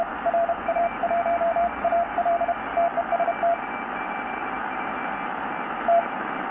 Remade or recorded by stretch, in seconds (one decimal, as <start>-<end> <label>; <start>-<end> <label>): 0.0-2.7 remade; 2.7-4.0 recorded; 4.0-6.5 remade

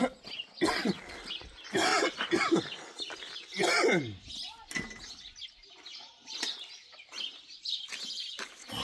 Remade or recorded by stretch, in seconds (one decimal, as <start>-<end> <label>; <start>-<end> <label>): 0.0-7.3 recorded; 7.3-7.9 remade; 7.9-8.8 recorded

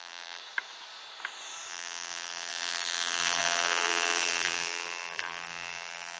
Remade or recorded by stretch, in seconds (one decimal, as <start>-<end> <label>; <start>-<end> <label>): 0.0-0.4 remade; 0.4-1.7 recorded; 1.7-6.2 remade

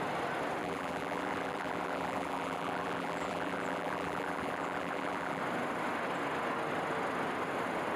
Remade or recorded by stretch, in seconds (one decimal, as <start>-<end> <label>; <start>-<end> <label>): 0.0-0.6 recorded; 0.6-5.4 remade; 5.4-8.0 recorded

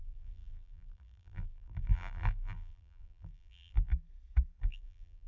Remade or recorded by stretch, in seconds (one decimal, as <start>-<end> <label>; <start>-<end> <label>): 0.0-3.9 remade; 3.9-4.6 recorded; 4.6-5.3 remade

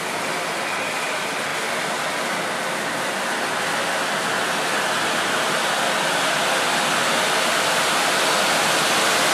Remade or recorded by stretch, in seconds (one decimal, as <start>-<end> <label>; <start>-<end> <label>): 0.0-9.3 recorded